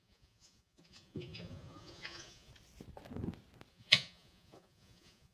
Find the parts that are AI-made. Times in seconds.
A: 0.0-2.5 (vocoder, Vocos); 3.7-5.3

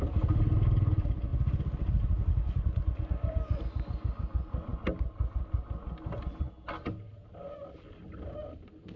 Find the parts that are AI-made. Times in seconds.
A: none

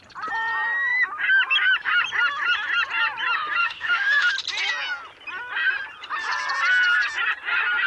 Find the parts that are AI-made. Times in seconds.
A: 3.6-4.3 (autoencoder, DAC-VAE)

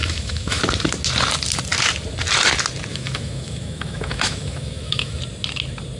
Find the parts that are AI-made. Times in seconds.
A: 0.0-0.6 (autoencoder, DAC-VAE); 2.9-5.2

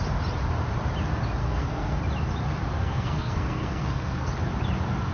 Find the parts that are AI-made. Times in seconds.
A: 1.4-2.0 (codec, SNAC); 2.8-4.3

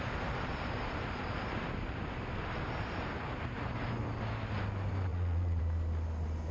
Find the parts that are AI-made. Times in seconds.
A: 5.1-5.6 (vocoder, Vocos)

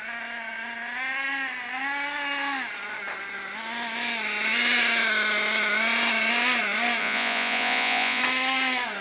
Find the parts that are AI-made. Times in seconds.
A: 7.0-8.2 (vocoder, Vocos)